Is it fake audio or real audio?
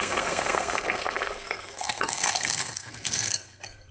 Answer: fake